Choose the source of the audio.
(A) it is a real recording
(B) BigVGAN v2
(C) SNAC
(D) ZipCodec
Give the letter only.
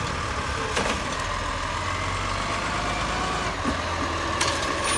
A